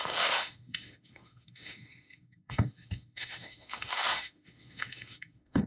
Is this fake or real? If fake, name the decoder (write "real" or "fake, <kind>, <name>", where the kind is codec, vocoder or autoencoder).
fake, autoencoder, DAC-VAE